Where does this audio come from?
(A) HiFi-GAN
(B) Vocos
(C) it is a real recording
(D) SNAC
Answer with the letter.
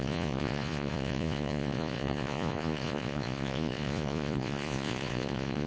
B